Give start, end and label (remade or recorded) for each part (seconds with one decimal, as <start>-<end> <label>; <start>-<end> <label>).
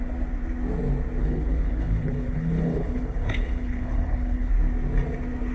0.0-1.2 recorded; 1.2-4.5 remade; 4.5-5.5 recorded